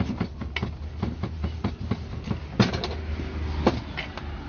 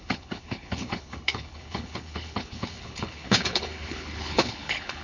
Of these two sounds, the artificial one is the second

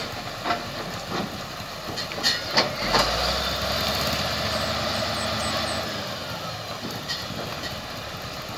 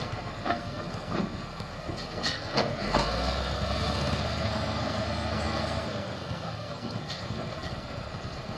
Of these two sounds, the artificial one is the second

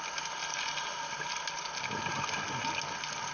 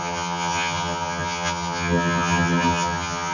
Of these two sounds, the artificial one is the second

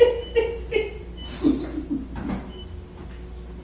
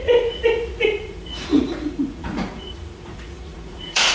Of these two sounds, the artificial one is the second